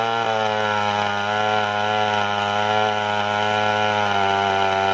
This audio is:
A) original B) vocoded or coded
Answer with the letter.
A